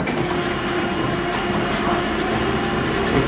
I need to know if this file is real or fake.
real